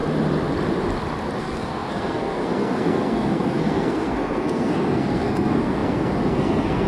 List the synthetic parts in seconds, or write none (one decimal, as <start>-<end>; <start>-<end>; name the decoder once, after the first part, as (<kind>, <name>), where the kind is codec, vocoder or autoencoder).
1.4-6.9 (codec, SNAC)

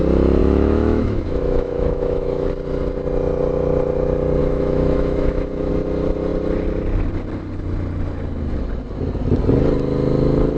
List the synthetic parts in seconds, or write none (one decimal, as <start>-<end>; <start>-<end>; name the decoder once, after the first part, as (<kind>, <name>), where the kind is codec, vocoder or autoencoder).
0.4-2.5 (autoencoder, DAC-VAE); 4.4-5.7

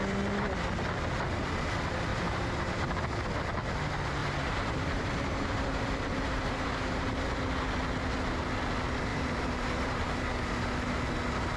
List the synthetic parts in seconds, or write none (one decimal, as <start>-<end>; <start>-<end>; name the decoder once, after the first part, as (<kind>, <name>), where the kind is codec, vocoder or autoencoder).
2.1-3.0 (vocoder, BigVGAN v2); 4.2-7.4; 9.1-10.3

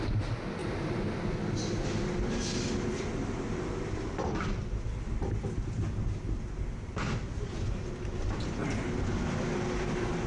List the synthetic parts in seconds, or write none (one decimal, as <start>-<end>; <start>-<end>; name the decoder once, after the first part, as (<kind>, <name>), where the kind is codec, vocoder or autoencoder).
0.6-1.2 (vocoder, BigVGAN v2)

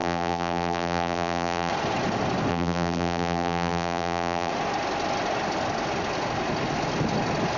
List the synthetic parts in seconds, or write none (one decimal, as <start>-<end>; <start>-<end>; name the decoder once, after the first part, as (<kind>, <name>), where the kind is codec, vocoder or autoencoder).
0.0-1.7 (vocoder, BigVGAN v2); 2.5-4.5

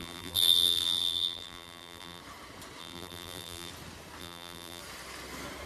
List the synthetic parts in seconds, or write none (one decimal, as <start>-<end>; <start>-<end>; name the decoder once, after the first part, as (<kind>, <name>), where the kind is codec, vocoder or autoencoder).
0.0-2.2 (vocoder, BigVGAN v2); 2.8-3.7; 4.2-4.8